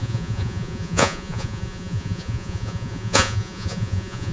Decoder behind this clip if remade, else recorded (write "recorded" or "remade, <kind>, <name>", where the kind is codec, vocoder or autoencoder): remade, vocoder, Vocos